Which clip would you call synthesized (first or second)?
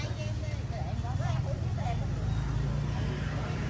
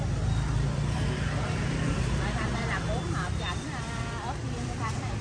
second